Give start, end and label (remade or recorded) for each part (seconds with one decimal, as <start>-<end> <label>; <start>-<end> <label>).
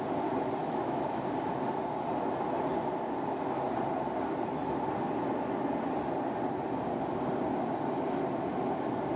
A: 0.0-0.6 recorded; 0.6-1.2 remade; 1.2-9.2 recorded